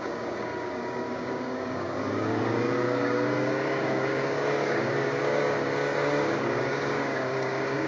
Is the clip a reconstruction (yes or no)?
yes